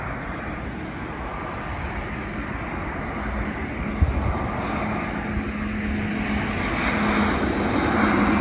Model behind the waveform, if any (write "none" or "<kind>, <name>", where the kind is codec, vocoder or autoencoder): none